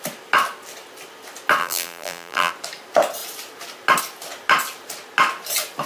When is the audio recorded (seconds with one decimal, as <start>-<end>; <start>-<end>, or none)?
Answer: 0.0-1.6; 2.5-5.9